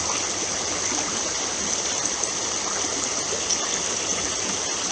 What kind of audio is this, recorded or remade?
recorded